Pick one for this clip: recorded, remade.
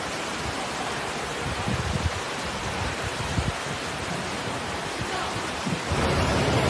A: remade